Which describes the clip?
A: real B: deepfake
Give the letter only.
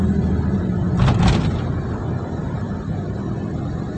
A